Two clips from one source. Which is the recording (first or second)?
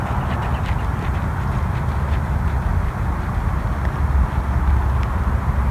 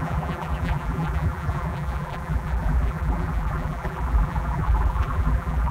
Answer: first